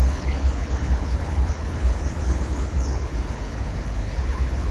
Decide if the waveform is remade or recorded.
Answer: remade